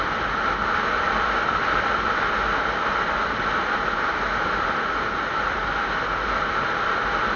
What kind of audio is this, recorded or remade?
recorded